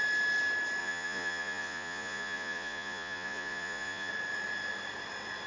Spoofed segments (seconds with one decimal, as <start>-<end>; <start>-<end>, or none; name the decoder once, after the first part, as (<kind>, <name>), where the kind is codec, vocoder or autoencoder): 0.8-4.1 (vocoder, Vocos)